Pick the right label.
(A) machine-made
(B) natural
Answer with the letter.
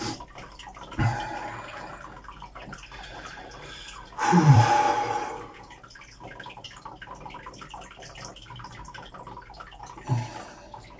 A